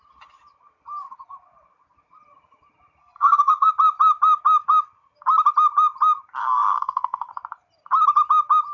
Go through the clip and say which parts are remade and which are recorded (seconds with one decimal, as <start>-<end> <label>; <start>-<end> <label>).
0.0-3.0 recorded; 3.0-3.7 remade; 3.7-6.4 recorded; 6.4-7.3 remade; 7.3-8.7 recorded